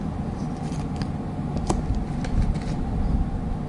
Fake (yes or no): no